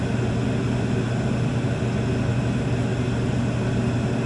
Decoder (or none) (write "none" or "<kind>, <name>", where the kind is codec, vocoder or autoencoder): none